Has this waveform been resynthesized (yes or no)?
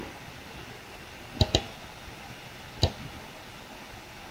no